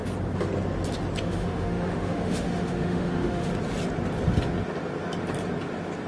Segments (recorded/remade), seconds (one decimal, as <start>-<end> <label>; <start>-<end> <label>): 0.0-1.2 recorded; 1.2-3.5 remade; 3.5-6.1 recorded